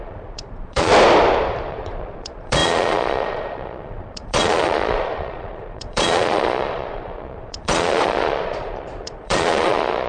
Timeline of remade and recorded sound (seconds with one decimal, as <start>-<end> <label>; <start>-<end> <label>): 0.0-0.9 remade; 0.9-1.7 recorded; 1.7-10.1 remade